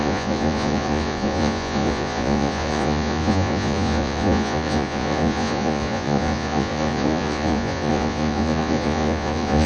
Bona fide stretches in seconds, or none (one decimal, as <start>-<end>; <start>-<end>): none